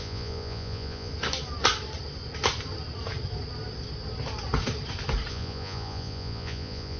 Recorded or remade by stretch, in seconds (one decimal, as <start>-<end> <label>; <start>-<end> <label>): 0.0-1.1 remade; 1.1-5.3 recorded; 5.3-7.0 remade